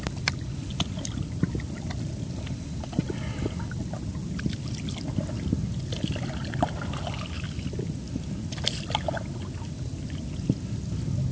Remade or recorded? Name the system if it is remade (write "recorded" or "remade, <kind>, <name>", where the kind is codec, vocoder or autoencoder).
recorded